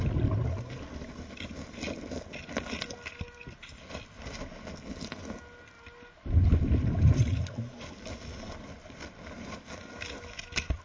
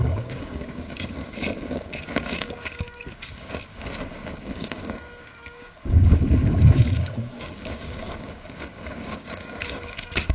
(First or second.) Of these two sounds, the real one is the first